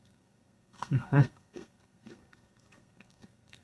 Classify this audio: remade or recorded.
remade